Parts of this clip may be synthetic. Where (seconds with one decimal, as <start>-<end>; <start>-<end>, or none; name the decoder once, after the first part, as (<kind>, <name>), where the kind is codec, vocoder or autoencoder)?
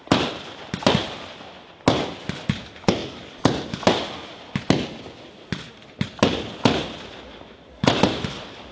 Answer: none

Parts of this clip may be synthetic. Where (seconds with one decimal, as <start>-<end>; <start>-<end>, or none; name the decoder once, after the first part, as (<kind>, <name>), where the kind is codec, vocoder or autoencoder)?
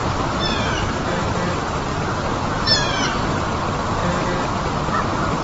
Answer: 0.0-1.1 (vocoder, BigVGAN v2)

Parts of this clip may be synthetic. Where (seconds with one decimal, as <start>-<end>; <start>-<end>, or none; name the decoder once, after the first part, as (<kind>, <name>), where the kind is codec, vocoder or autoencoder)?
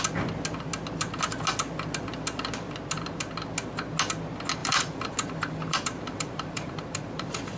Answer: 4.6-7.6 (vocoder, BigVGAN v2)